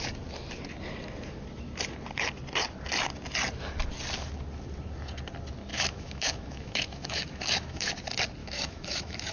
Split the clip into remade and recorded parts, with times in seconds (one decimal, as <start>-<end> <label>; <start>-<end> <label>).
0.0-5.7 recorded; 5.7-7.9 remade; 7.9-8.4 recorded; 8.4-9.3 remade